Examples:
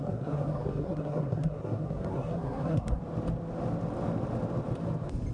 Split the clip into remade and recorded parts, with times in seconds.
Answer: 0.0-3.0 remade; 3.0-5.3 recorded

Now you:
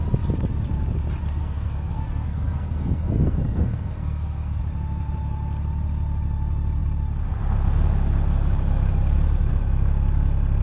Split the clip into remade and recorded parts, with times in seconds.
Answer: 0.0-1.4 recorded; 1.4-4.6 remade; 4.6-10.6 recorded